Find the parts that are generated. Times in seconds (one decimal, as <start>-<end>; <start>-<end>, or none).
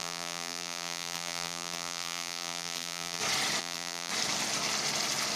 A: 0.0-3.2; 3.6-4.1